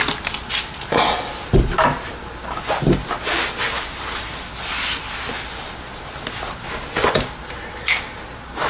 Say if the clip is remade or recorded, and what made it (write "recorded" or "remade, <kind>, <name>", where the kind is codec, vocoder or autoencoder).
recorded